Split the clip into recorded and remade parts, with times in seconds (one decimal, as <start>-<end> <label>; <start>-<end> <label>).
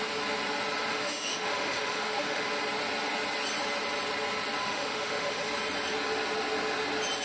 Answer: 0.0-0.9 recorded; 0.9-2.5 remade; 2.5-4.6 recorded; 4.6-5.5 remade; 5.5-7.2 recorded